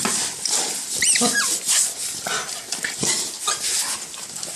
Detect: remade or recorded recorded